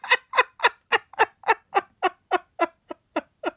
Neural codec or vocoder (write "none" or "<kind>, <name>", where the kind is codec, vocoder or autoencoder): none